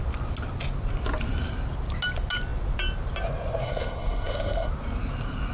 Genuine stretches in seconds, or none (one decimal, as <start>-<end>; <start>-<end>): 0.0-3.6; 4.7-5.5